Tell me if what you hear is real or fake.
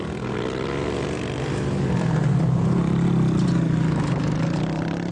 real